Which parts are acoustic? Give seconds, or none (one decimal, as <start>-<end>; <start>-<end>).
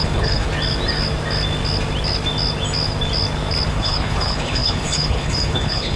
0.5-3.7